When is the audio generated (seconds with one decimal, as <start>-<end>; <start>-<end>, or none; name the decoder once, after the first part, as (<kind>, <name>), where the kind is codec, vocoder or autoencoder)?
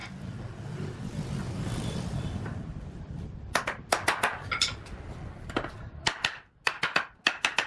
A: none